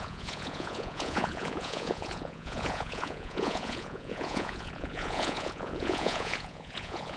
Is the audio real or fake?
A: fake